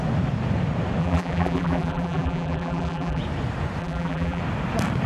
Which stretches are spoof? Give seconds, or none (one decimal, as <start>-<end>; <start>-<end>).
1.0-3.2; 3.8-4.4